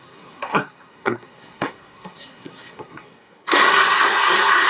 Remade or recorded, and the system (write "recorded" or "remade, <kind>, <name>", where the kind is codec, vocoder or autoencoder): remade, codec, SNAC